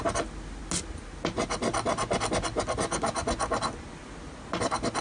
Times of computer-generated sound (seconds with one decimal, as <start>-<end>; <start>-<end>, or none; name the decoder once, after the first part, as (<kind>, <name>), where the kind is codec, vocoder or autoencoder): none